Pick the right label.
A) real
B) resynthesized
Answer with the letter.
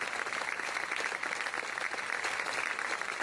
A